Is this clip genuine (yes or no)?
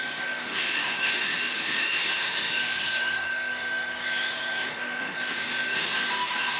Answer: no